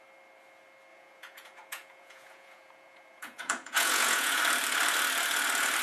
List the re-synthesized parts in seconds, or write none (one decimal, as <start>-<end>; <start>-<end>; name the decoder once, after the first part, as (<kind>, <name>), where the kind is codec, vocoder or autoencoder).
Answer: 0.9-4.4 (vocoder, Vocos)